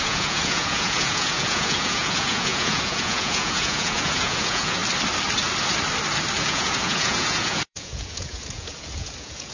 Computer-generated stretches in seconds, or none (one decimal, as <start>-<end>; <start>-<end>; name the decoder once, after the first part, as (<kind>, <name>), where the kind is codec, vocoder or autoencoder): 0.0-4.8 (vocoder, Vocos); 6.4-9.5